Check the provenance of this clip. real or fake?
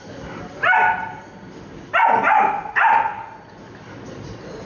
real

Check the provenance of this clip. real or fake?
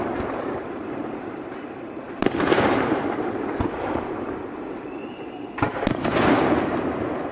fake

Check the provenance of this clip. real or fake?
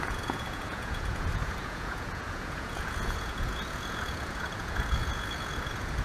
fake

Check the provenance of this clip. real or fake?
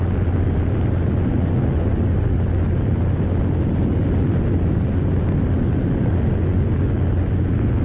real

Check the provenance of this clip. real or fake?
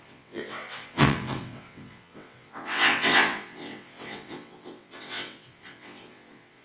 fake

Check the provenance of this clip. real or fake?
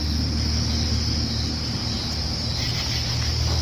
real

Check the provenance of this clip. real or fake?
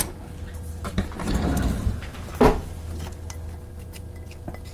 real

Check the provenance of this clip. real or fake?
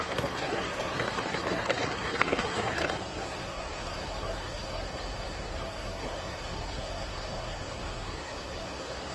fake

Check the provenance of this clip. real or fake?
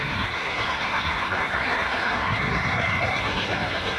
fake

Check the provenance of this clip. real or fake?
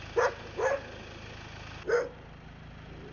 real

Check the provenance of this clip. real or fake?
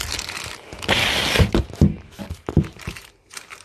real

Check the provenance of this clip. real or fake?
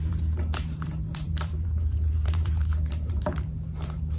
fake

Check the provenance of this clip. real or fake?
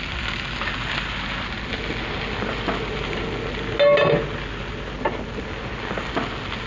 real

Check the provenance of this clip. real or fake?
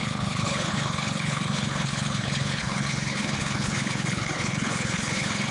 fake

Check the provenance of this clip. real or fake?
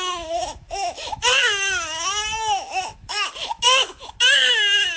fake